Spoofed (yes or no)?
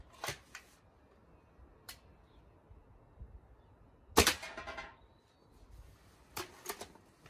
no